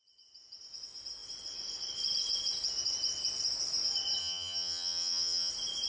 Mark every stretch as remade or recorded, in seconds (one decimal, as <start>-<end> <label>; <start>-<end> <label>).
0.0-4.2 recorded; 4.2-5.5 remade; 5.5-5.9 recorded